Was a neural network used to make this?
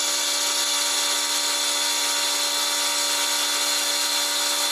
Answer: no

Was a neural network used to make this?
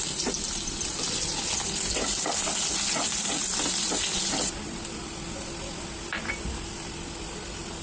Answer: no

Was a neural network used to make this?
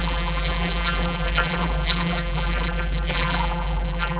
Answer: yes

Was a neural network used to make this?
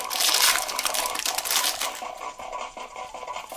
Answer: yes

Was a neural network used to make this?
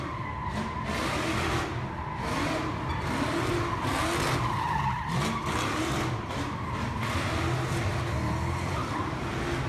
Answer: no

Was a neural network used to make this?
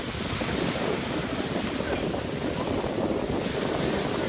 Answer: no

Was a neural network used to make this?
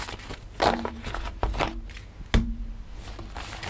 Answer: no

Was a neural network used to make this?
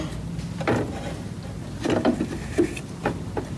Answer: no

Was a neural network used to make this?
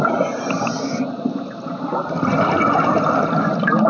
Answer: no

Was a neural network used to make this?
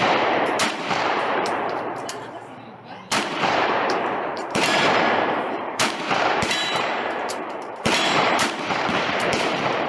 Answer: yes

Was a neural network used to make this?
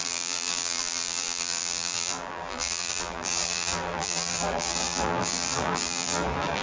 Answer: yes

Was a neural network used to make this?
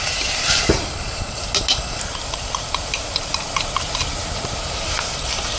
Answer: yes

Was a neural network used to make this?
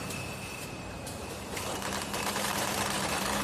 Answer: yes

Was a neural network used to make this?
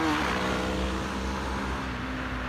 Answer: no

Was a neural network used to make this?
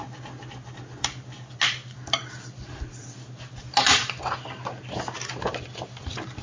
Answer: no